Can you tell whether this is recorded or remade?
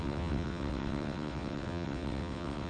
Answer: remade